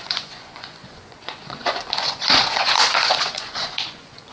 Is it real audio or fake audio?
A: fake